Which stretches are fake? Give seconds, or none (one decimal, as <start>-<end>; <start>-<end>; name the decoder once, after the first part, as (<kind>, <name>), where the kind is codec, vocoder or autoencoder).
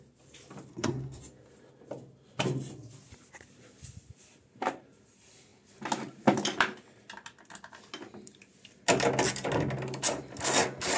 0.7-1.2 (codec, SNAC)